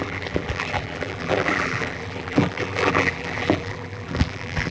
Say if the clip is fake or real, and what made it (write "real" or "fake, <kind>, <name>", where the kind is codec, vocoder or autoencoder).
fake, vocoder, BigVGAN v2